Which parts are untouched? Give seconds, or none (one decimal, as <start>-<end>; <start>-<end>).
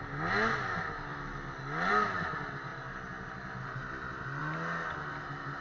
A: 0.0-5.6